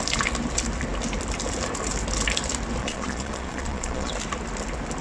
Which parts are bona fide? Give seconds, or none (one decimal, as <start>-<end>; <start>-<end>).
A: 0.0-2.8; 4.1-5.0